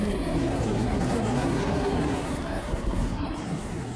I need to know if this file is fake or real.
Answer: fake